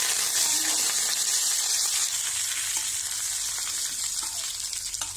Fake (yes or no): no